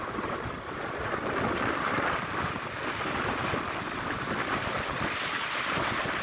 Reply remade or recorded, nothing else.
recorded